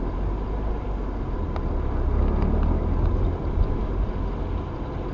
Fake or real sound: real